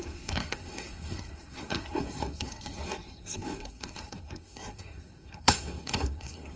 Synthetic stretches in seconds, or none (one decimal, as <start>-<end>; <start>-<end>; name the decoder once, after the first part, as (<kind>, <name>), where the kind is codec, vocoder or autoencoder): 0.0-6.6 (codec, SNAC)